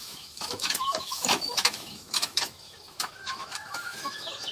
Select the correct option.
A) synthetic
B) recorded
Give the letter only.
A